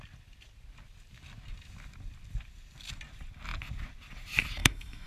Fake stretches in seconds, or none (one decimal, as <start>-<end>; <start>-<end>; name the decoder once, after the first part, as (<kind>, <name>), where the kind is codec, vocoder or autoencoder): 4.6-5.1 (autoencoder, DAC-VAE)

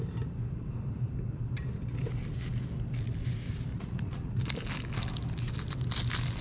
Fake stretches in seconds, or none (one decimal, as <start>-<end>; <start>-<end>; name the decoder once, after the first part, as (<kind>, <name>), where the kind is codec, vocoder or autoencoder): 3.7-4.4 (vocoder, Vocos)